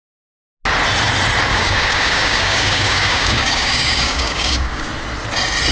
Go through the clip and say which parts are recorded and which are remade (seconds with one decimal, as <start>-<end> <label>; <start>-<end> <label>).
0.0-1.5 recorded; 1.5-4.9 remade; 4.9-5.7 recorded